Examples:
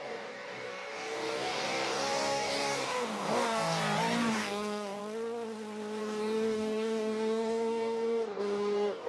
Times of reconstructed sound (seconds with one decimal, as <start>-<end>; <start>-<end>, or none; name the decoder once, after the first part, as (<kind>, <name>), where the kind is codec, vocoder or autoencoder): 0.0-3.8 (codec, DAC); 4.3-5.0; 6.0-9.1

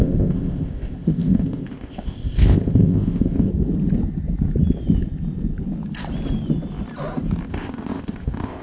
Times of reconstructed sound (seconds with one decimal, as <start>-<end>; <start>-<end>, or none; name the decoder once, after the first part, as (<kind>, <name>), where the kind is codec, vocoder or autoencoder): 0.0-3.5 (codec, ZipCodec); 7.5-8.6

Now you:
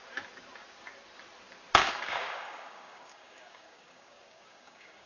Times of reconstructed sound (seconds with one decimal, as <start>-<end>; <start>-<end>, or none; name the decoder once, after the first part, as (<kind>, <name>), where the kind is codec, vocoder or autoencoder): 1.8-5.1 (codec, DAC)

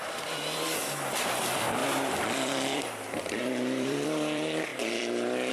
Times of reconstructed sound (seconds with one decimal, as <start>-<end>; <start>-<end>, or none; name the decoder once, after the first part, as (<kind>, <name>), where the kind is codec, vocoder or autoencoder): 0.0-5.5 (vocoder, BigVGAN v2)

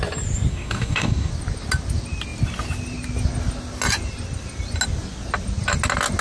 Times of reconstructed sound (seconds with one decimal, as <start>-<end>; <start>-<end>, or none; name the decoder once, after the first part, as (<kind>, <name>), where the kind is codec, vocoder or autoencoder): 0.5-1.3 (codec, DAC)